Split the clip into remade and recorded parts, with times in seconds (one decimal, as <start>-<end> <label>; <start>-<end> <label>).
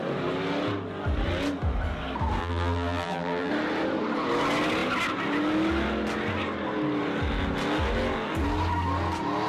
0.0-2.4 recorded; 2.4-3.5 remade; 3.5-9.5 recorded